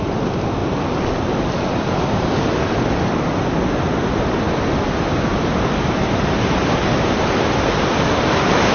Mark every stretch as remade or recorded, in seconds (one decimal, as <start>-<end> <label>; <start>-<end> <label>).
0.0-0.6 recorded; 0.6-2.8 remade; 2.8-8.7 recorded